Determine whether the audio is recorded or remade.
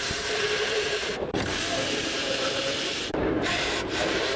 remade